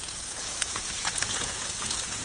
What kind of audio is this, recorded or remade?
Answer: remade